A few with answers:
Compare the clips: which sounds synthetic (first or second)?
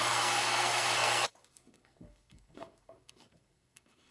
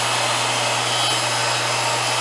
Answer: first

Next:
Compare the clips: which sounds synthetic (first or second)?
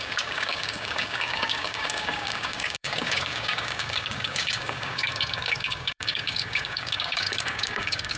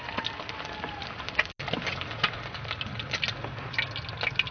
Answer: first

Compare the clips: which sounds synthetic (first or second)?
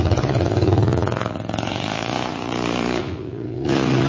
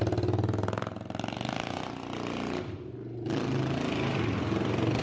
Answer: first